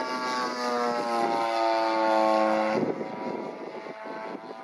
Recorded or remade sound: recorded